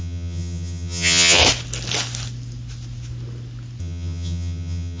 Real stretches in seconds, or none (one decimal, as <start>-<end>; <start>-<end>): 1.4-3.8